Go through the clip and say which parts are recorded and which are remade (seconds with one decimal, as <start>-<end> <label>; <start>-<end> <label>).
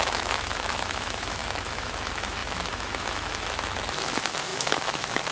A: 0.0-5.3 remade